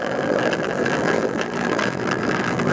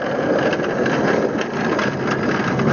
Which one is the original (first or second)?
second